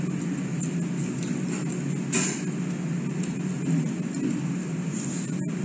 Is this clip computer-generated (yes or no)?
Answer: no